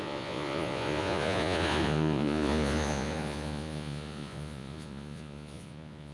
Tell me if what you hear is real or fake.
fake